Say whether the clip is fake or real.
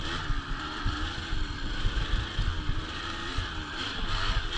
fake